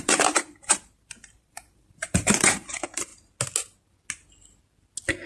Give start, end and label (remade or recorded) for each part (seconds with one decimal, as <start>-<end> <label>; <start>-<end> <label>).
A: 0.0-3.1 remade; 3.1-5.3 recorded